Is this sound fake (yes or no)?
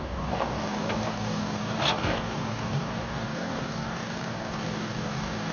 yes